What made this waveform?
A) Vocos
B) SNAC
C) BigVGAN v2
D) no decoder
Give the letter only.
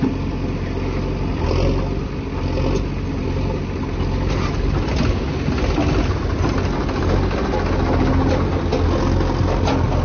D